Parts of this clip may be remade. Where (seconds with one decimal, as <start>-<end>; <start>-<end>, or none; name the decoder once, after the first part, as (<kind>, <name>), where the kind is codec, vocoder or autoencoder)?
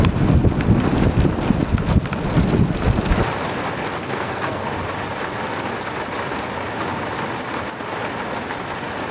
4.0-4.7 (codec, SNAC)